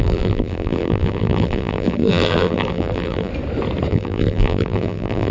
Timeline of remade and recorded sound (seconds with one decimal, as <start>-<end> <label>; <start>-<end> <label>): 0.0-3.3 remade; 3.3-3.9 recorded; 3.9-5.3 remade